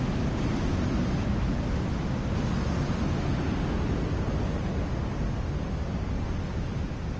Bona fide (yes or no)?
yes